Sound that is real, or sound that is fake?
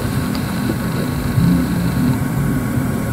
fake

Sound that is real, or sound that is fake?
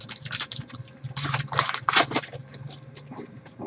fake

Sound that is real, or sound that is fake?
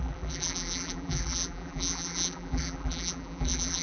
fake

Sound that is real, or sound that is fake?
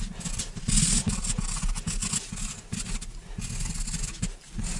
real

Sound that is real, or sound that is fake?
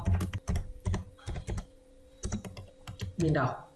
fake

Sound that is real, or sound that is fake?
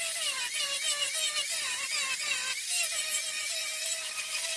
fake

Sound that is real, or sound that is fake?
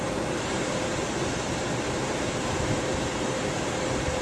fake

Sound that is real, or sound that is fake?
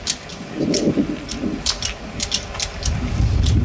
real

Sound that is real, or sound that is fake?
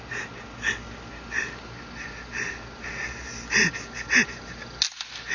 real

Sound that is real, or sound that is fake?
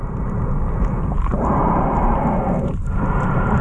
fake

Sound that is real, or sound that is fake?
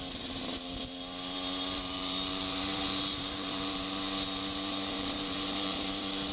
fake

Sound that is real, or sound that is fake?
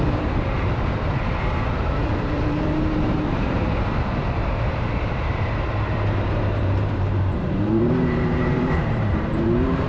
fake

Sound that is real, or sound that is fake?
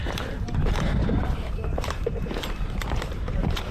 fake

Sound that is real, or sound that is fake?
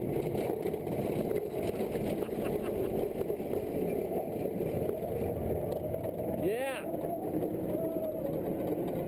real